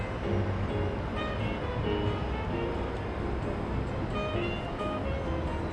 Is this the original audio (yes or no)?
yes